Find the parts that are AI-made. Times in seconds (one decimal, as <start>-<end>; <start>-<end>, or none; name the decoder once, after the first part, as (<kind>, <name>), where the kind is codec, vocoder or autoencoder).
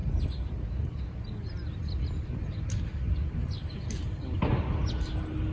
none